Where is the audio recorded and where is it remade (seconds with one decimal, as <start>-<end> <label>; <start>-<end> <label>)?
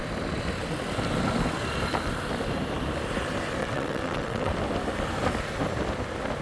0.0-3.6 recorded; 3.6-4.5 remade; 4.5-6.4 recorded